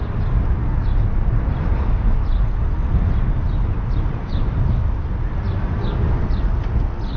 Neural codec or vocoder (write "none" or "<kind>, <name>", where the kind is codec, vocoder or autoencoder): none